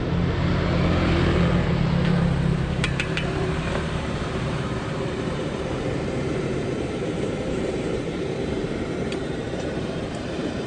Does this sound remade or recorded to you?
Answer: remade